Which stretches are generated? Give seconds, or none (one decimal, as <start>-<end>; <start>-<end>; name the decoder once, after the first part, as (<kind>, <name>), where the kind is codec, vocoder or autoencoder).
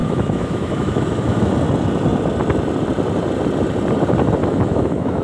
0.0-1.5 (autoencoder, DAC-VAE); 4.4-5.2